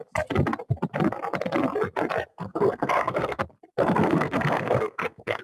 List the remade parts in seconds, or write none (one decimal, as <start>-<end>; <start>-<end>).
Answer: 2.3-3.4; 3.8-5.4